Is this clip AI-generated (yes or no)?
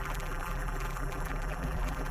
yes